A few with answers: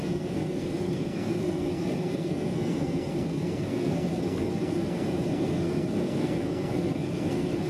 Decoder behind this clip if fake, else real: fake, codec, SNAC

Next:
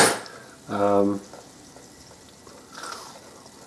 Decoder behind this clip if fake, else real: real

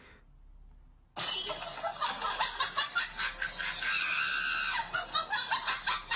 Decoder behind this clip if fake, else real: real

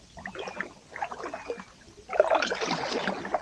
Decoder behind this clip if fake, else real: real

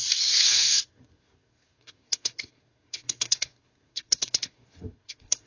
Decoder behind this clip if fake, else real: fake, codec, SNAC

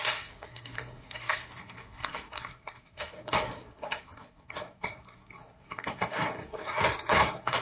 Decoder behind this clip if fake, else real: fake, codec, SNAC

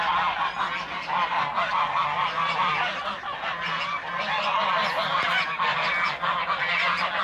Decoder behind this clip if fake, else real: real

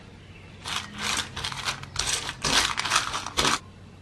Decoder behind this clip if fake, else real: real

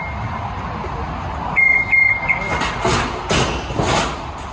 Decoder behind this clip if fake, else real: real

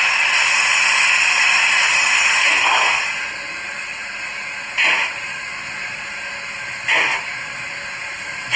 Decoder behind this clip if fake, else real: real